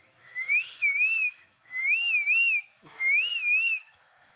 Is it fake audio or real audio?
fake